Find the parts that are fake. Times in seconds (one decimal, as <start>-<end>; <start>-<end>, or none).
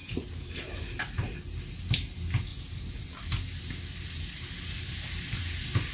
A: none